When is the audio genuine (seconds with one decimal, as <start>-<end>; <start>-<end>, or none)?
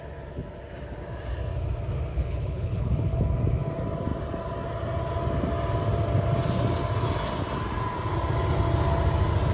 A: 0.0-2.1; 3.2-9.5